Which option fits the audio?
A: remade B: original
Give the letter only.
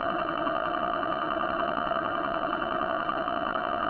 A